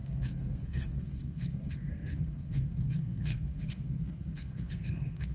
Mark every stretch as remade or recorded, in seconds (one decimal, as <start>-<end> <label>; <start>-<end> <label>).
0.0-5.3 remade